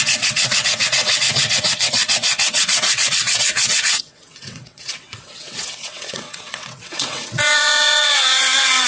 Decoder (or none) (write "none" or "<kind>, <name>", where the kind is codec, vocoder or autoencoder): vocoder, WaveNeXt